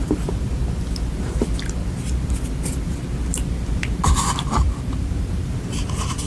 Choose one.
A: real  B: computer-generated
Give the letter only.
A